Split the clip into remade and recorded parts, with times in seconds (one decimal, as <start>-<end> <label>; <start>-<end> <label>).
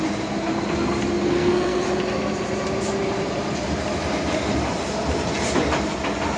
0.0-1.2 recorded; 1.2-1.8 remade; 1.8-6.4 recorded